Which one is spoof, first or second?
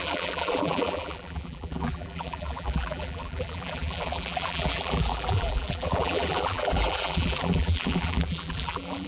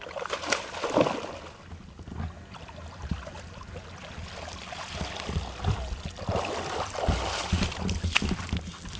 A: first